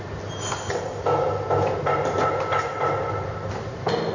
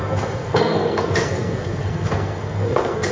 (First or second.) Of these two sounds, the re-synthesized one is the second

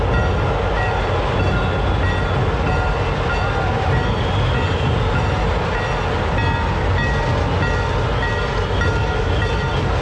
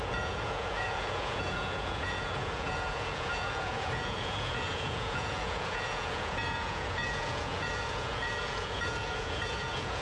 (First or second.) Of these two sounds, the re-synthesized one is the second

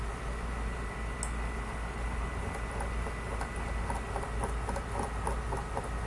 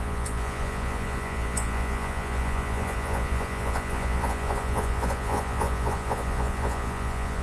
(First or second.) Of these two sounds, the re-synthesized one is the second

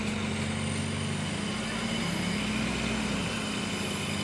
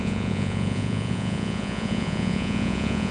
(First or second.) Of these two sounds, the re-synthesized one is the second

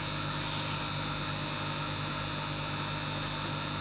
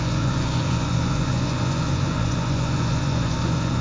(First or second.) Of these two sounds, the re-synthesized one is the second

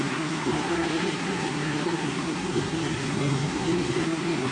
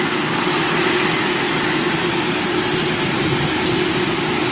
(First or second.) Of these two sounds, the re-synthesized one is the first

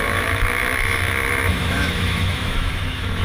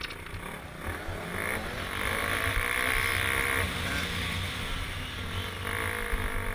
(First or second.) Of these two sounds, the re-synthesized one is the first